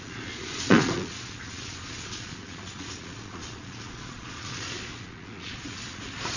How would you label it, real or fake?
fake